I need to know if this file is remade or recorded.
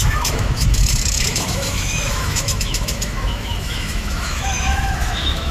remade